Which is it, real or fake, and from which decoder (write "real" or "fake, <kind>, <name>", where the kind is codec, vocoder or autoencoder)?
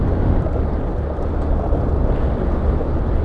real